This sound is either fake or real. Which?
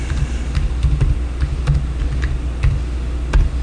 fake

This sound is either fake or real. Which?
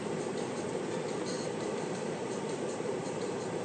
fake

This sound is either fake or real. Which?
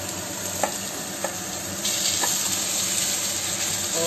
real